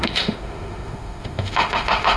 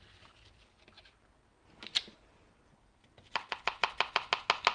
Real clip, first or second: second